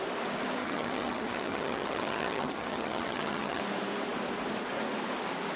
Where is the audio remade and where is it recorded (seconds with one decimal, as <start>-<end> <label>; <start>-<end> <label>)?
0.0-0.6 recorded; 0.6-3.6 remade; 3.6-5.6 recorded